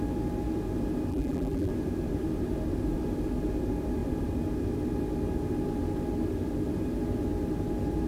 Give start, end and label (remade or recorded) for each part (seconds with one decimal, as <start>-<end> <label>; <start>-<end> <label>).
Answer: 0.0-1.1 recorded; 1.1-1.7 remade; 1.7-8.1 recorded